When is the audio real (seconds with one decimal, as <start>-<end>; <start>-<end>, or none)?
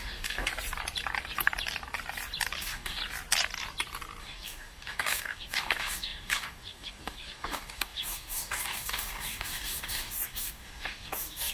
0.5-2.6; 3.0-4.2